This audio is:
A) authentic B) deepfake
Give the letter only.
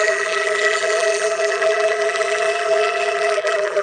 B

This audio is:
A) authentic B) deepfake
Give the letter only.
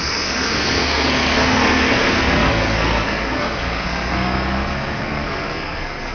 B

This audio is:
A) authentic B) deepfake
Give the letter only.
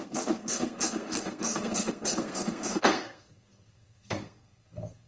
B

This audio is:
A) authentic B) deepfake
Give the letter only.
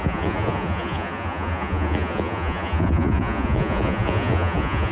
B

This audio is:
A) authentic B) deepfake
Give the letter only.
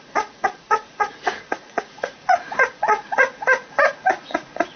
B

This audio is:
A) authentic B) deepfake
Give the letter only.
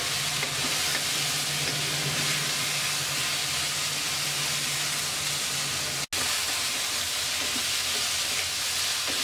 A